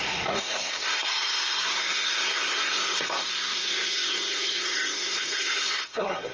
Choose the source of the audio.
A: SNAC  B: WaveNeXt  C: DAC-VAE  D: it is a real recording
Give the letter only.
A